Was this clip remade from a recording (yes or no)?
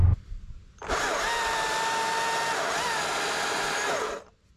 no